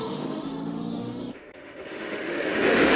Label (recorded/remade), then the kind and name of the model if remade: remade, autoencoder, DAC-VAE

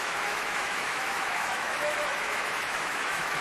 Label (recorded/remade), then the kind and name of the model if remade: remade, autoencoder, DAC-VAE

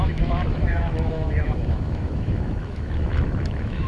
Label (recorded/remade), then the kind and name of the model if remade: remade, autoencoder, DAC-VAE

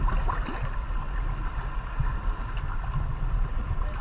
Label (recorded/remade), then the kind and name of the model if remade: recorded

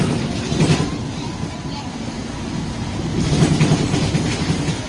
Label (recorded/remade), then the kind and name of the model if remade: recorded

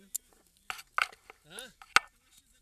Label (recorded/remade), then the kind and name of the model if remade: recorded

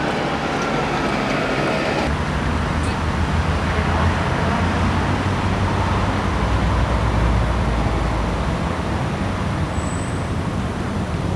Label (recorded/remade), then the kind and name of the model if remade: recorded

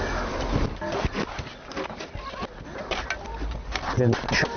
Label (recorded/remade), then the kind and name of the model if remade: recorded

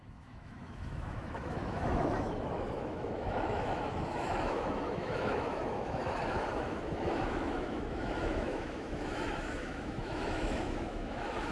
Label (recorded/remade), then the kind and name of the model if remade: remade, autoencoder, DAC-VAE